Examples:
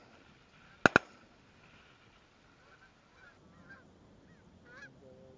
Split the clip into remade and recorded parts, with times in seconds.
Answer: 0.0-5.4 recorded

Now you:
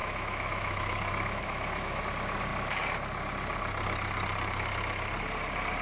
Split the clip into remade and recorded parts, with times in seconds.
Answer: 0.0-2.0 remade; 2.0-5.8 recorded

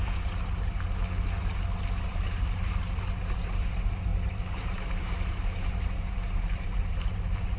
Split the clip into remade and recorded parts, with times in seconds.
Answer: 0.0-1.0 remade; 1.0-2.0 recorded; 2.0-7.6 remade

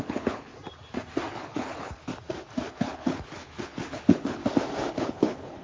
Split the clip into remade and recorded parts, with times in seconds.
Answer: 0.0-0.5 remade; 0.5-1.3 recorded; 1.3-2.1 remade; 2.1-2.7 recorded; 2.7-4.4 remade; 4.4-4.9 recorded; 4.9-5.6 remade